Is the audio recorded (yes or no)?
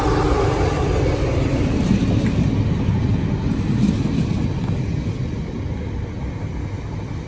yes